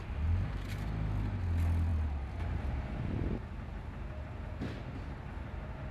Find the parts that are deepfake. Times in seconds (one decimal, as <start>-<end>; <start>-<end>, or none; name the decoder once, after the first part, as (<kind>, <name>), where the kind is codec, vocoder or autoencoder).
none